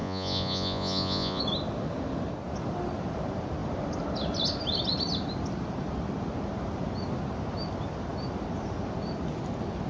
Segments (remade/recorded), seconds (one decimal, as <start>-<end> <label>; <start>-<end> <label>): 0.0-1.4 remade; 1.4-9.9 recorded